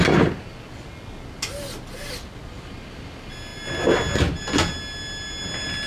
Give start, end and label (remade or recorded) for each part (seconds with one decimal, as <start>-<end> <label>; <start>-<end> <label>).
0.0-5.9 recorded